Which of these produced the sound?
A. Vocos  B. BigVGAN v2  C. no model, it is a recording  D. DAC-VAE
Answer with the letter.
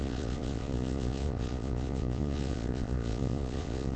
A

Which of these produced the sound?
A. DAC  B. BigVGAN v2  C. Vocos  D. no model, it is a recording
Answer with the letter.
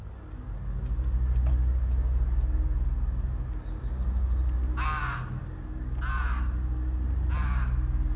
D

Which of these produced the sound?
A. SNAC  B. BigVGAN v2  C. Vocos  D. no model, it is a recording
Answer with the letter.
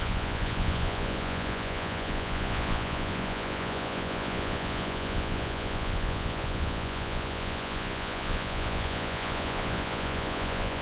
C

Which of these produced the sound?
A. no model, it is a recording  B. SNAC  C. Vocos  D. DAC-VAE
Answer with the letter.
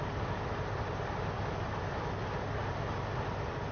A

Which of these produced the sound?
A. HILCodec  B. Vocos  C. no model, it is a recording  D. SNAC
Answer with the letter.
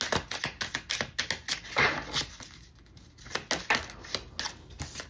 C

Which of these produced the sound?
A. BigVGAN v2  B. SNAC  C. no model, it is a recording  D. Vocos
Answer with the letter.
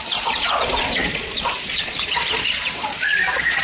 D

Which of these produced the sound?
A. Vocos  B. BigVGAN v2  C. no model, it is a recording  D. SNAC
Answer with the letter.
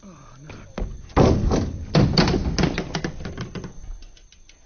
C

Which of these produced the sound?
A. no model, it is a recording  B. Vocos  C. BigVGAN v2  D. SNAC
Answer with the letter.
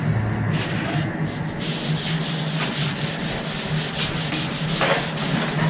A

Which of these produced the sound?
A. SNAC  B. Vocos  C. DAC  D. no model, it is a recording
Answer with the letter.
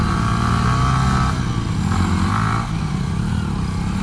D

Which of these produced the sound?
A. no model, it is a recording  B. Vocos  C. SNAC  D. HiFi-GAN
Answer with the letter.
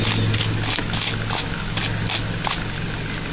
A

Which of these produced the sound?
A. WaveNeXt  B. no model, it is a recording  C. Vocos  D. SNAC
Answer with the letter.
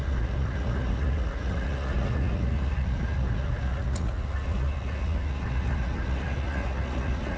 C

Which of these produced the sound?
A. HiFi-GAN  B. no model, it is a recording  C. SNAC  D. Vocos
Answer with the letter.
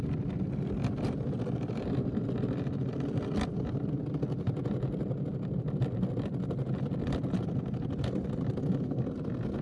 B